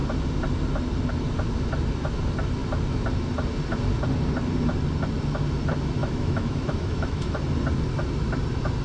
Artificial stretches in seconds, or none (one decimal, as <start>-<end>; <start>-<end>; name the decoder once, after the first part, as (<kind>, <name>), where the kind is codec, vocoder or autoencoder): 6.0-7.4 (autoencoder, DAC-VAE)